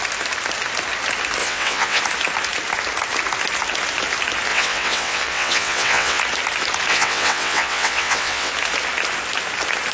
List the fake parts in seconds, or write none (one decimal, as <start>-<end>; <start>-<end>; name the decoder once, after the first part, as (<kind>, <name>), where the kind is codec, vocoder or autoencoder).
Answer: 1.4-2.0 (vocoder, WaveNeXt); 4.5-6.2; 6.9-8.5